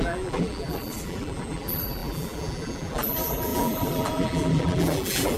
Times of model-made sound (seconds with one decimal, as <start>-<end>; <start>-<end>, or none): 0.0-5.4

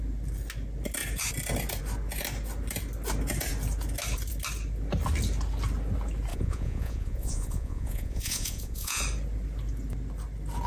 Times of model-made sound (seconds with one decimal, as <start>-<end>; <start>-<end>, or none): 6.3-9.0